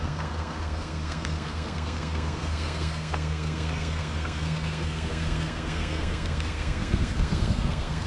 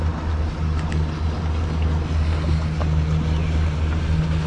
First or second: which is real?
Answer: second